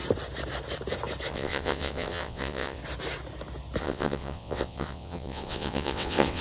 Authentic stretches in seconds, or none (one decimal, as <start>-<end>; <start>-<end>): 0.0-1.3; 2.8-3.8